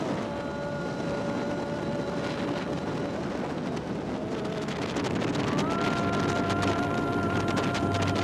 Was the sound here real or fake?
real